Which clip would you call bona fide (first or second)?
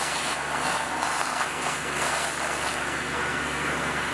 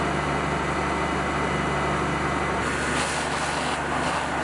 second